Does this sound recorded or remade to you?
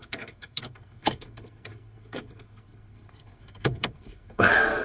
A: remade